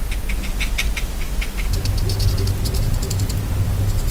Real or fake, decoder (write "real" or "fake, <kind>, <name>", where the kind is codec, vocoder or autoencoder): real